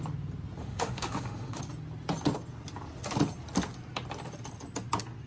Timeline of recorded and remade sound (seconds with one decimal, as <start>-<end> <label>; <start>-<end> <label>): 0.0-0.6 recorded; 0.6-1.6 remade; 1.6-5.3 recorded